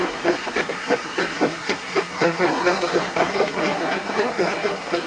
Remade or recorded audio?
remade